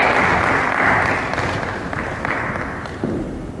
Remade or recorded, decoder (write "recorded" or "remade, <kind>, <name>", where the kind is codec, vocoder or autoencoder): recorded